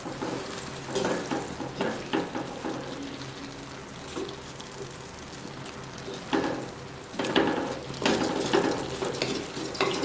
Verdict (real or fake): real